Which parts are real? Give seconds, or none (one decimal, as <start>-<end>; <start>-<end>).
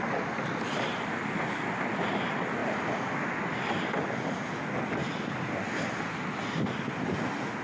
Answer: 0.0-7.6